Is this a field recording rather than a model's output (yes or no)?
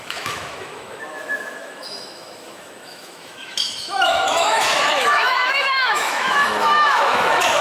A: no